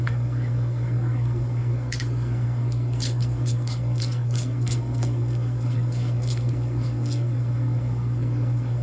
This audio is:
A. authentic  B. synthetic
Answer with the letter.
B